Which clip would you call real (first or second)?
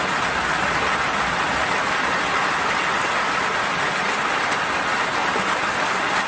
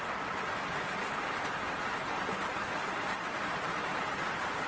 first